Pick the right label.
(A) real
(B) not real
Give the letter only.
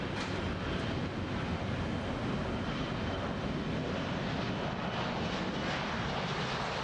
A